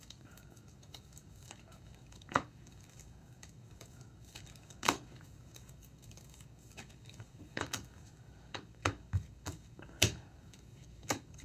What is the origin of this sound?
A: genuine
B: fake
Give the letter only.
B